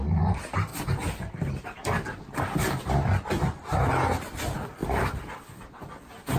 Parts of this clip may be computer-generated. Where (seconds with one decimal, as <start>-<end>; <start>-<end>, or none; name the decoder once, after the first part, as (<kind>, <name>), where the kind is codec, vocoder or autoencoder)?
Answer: 4.8-5.8 (vocoder, BigVGAN v2)